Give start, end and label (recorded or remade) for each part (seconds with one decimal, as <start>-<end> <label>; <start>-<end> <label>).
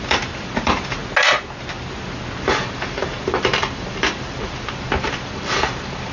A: 0.0-1.0 remade; 1.0-2.4 recorded; 2.4-6.1 remade